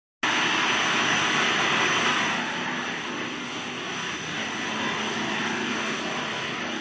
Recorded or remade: recorded